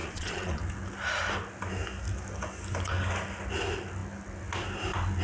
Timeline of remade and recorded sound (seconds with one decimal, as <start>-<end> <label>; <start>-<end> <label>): 0.0-0.6 remade; 0.6-5.2 recorded